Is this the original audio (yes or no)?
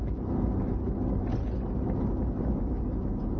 yes